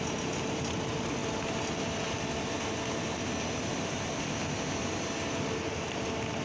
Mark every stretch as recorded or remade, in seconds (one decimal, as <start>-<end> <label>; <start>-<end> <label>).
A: 0.0-6.4 recorded